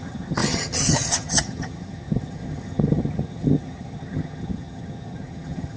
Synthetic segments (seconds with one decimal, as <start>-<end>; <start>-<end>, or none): 0.0-5.8